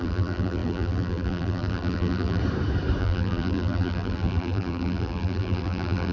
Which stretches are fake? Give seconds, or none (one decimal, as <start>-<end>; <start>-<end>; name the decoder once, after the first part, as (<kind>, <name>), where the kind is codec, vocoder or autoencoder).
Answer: 0.0-2.4 (vocoder, BigVGAN v2); 3.0-6.1